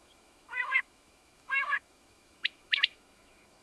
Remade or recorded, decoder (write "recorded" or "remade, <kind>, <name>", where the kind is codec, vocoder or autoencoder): remade, autoencoder, DAC-VAE